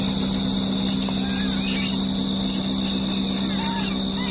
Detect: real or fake real